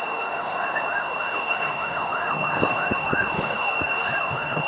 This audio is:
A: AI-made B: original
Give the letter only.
A